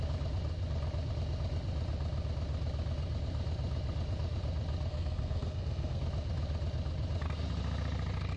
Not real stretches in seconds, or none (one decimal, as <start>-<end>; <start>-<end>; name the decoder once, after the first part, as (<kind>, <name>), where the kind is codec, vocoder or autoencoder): 4.9-6.0 (codec, SNAC)